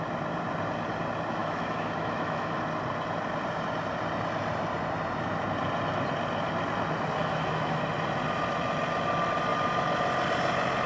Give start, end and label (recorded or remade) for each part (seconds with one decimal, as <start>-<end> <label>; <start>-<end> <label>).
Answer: 0.0-1.4 recorded; 1.4-2.6 remade; 2.6-7.2 recorded; 7.2-7.8 remade; 7.8-10.9 recorded

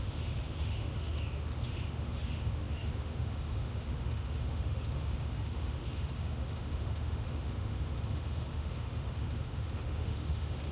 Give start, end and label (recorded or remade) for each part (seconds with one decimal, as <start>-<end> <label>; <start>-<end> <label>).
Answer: 0.0-10.7 remade

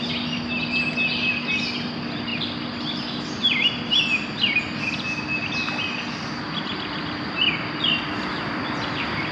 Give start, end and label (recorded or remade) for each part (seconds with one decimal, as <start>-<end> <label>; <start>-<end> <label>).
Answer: 0.0-9.3 recorded

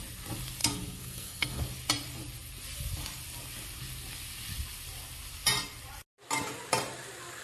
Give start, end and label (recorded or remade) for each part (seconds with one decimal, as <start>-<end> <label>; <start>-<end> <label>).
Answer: 0.0-0.6 recorded; 0.6-1.6 remade; 1.6-7.4 recorded

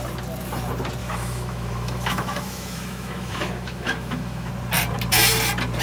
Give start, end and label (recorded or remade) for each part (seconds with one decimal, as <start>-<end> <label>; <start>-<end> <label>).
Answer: 0.0-1.0 recorded; 1.0-4.5 remade; 4.5-5.8 recorded